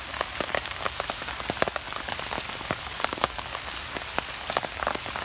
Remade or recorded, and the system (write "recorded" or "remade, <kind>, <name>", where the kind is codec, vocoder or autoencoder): remade, codec, DAC